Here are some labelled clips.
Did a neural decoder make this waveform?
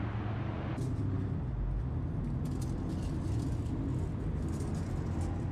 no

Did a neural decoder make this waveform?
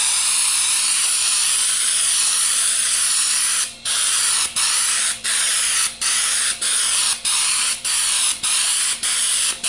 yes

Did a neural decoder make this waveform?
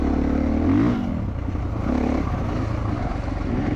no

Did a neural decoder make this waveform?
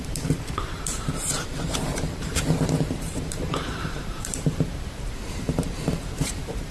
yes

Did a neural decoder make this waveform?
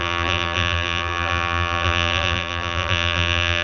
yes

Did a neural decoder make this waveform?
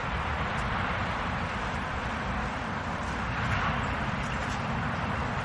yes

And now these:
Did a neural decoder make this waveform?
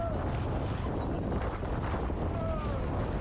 no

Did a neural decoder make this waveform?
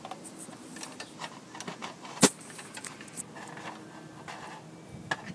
no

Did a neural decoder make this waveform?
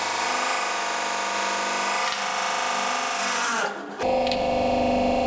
no